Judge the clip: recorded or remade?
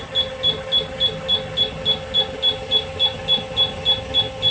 recorded